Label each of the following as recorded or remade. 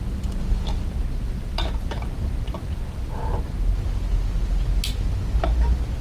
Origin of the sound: recorded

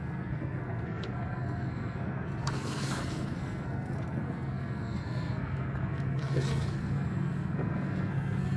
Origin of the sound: remade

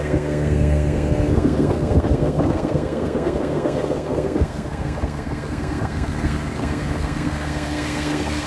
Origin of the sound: remade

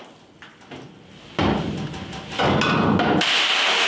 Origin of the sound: recorded